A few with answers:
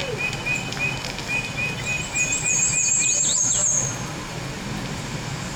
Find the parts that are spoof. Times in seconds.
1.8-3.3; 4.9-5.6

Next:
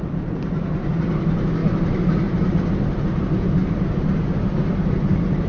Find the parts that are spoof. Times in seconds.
none

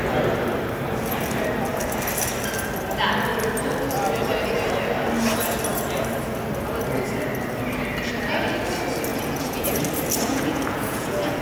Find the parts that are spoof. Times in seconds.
9.1-9.8; 10.3-11.4

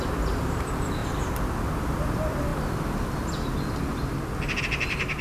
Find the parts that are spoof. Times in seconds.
0.0-1.0; 2.0-2.5; 4.6-5.2

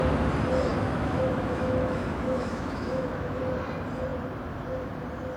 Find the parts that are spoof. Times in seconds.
0.7-3.4